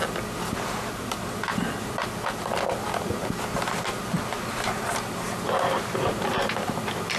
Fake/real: real